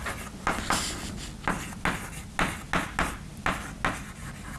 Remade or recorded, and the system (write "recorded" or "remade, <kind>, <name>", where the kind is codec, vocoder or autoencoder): recorded